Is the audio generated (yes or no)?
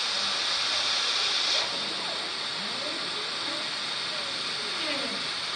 no